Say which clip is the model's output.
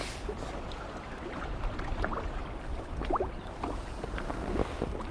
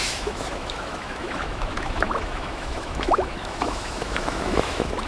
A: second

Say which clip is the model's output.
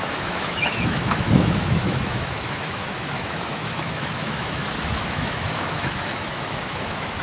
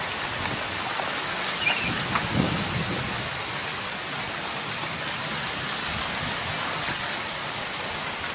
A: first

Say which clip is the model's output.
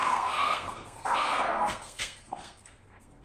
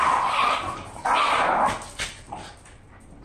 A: first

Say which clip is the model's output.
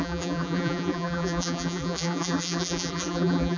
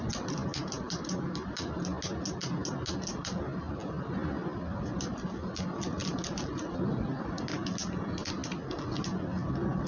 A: first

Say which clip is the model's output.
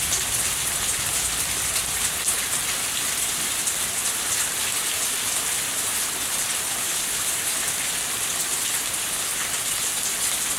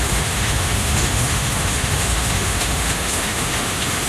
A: second